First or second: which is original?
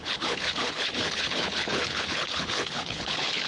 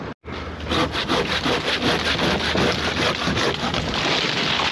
second